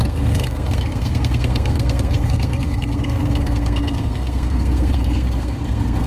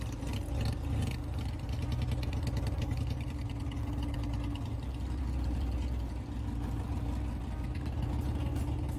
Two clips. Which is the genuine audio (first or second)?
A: second